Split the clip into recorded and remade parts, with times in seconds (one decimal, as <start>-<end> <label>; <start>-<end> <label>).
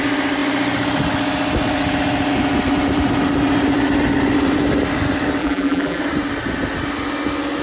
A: 0.0-5.4 recorded; 5.4-6.0 remade; 6.0-7.6 recorded